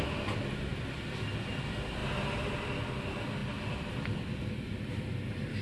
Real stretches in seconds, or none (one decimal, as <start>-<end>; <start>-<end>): 0.0-5.6